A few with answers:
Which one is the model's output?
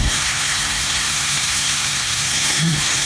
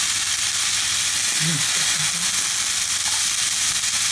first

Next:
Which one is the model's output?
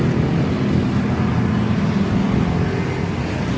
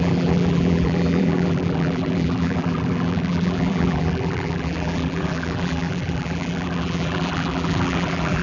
second